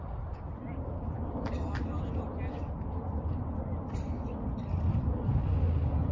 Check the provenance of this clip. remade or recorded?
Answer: recorded